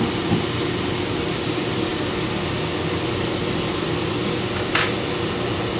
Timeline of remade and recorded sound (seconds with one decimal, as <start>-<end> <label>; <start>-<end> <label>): 0.0-5.8 recorded